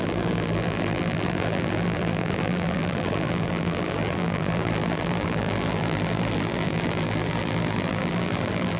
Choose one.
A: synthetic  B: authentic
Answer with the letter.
A